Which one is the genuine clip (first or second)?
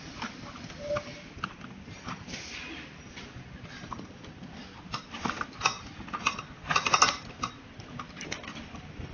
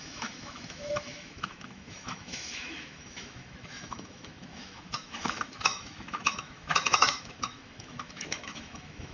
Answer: first